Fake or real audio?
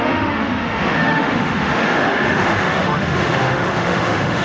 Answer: fake